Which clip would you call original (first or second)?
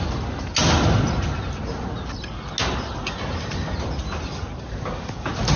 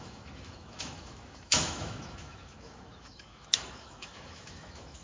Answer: first